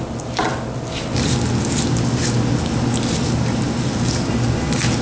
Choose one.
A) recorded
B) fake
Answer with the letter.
A